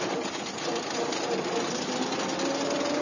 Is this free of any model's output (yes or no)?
yes